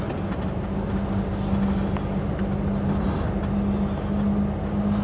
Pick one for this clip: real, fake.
real